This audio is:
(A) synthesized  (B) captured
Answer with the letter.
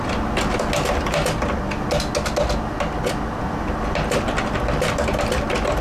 B